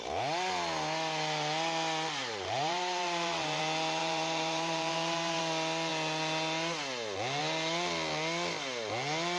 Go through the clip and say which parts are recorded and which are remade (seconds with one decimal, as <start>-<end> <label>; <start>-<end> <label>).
0.0-2.2 recorded; 2.2-3.6 remade; 3.6-4.0 recorded; 4.0-5.4 remade; 5.4-9.4 recorded